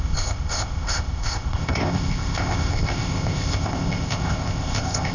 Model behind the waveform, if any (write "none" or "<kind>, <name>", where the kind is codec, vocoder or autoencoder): codec, ZipCodec